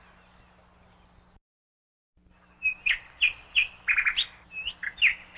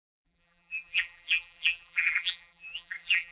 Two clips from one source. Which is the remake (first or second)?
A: second